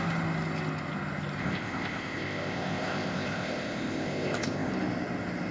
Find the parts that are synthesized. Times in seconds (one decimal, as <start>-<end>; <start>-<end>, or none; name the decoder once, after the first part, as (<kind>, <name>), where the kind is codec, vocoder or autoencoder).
1.4-4.7 (codec, ZipCodec)